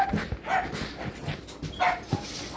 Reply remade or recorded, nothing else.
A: recorded